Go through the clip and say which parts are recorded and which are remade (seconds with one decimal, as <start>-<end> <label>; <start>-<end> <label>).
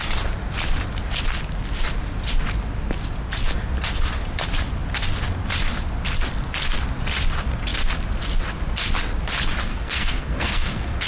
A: 0.0-9.7 recorded; 9.7-11.1 remade